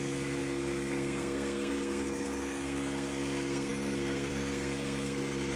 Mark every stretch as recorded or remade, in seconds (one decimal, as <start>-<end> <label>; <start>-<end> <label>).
0.0-5.6 remade